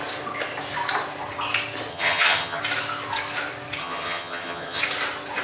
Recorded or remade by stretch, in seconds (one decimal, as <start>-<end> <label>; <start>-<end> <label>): 0.0-1.9 recorded; 1.9-2.6 remade; 2.6-3.8 recorded; 3.8-4.8 remade; 4.8-5.4 recorded